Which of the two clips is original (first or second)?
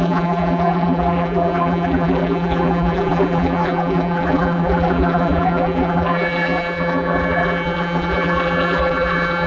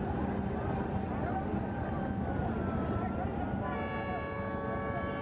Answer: second